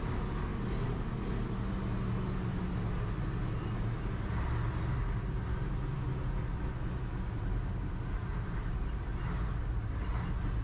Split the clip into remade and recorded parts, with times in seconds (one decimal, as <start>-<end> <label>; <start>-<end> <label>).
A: 0.0-10.6 recorded